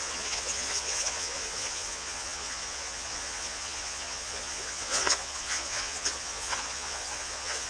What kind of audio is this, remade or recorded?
remade